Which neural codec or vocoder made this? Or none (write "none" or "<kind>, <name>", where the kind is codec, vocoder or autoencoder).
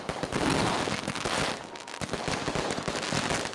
none